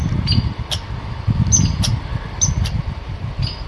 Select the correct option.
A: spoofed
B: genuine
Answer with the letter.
B